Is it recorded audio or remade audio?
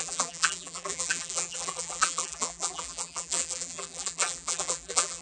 remade